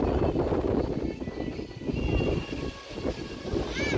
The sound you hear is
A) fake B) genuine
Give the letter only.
B